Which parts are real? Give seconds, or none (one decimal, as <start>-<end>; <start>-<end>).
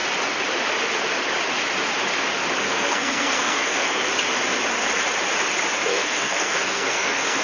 0.0-2.6; 4.1-5.9